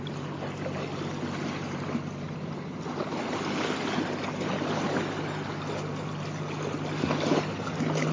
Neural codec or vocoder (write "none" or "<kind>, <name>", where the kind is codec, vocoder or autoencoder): none